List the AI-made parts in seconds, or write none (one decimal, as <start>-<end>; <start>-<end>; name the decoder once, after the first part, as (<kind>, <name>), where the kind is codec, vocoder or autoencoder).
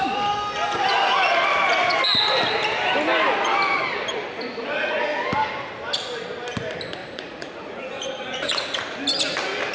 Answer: 7.0-8.8 (vocoder, Vocos)